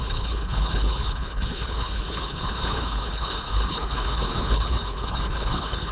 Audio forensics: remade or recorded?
remade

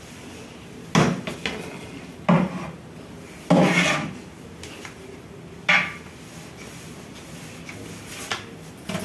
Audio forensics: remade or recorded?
recorded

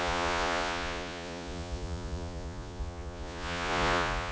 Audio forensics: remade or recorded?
remade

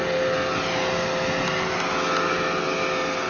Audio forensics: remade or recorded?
recorded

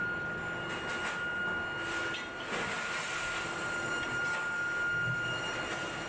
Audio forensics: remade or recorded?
recorded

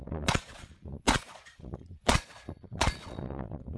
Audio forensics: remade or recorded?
remade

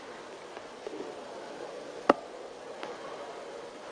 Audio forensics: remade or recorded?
recorded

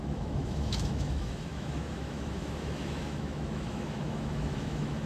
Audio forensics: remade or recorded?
remade